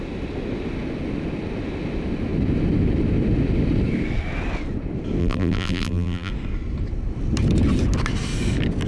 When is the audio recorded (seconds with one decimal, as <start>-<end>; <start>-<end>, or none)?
0.0-5.2; 6.3-8.9